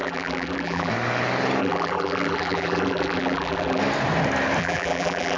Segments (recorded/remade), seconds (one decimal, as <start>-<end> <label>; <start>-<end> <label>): 0.0-0.9 remade; 0.9-1.6 recorded; 1.6-3.8 remade; 3.8-4.6 recorded; 4.6-5.4 remade